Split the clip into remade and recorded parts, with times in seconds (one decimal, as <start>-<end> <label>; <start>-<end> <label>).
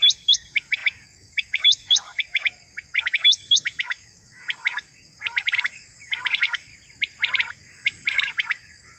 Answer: 0.0-6.7 remade; 6.7-7.5 recorded; 7.5-9.0 remade